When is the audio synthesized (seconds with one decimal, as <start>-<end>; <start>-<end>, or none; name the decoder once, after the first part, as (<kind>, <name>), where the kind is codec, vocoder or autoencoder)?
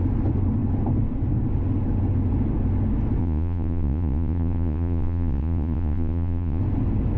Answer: 3.2-6.6 (vocoder, Vocos)